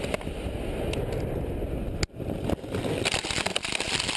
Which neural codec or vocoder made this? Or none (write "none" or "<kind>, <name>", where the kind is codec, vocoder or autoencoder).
none